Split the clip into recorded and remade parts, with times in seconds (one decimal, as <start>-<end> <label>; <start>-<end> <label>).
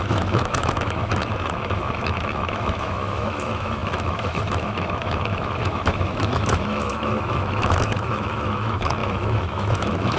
0.0-10.2 remade